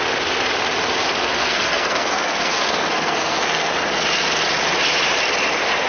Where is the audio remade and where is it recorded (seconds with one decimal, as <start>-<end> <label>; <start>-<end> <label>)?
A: 0.0-1.2 recorded; 1.2-3.7 remade; 3.7-5.9 recorded